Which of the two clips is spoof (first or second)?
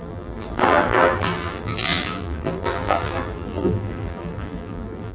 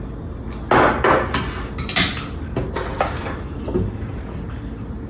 first